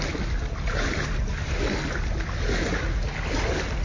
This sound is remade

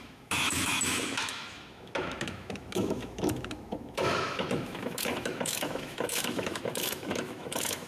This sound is remade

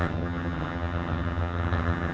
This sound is remade